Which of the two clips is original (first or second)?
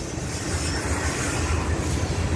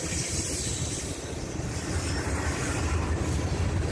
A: first